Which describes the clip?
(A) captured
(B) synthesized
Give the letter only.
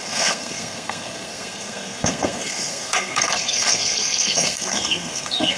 B